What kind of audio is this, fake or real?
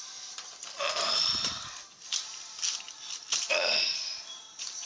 real